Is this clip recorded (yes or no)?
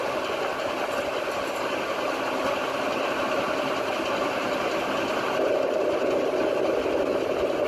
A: yes